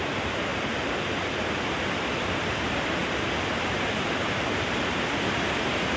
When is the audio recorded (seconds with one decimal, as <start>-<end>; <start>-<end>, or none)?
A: 0.5-2.2; 3.0-3.6